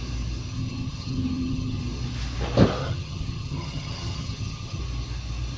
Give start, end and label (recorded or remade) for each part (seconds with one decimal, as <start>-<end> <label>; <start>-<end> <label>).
0.0-0.5 recorded; 0.5-1.8 remade; 1.8-2.8 recorded; 2.8-4.8 remade; 4.8-5.6 recorded

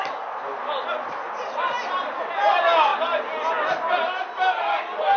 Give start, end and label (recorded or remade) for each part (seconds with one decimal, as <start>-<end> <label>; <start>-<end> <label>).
0.0-5.2 recorded

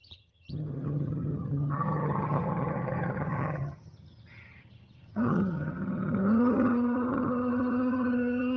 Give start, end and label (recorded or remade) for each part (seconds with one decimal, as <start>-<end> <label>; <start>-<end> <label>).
0.0-8.6 remade

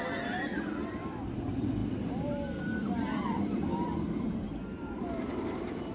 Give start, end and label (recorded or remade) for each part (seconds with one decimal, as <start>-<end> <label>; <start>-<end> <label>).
0.0-5.9 recorded

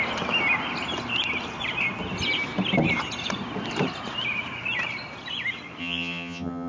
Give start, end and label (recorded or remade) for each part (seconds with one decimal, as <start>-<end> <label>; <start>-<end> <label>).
0.0-5.8 recorded; 5.8-6.7 remade